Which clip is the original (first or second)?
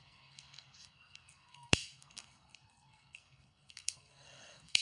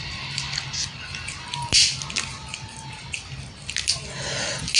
second